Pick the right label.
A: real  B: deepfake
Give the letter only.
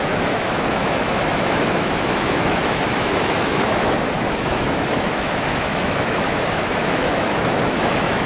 B